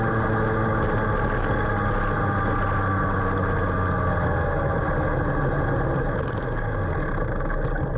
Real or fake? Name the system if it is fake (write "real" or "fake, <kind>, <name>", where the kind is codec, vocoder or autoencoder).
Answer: real